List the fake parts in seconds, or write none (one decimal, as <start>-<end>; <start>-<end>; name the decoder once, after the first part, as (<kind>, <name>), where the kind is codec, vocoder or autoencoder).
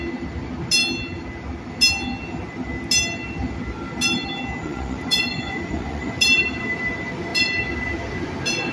4.6-6.2 (vocoder, Vocos)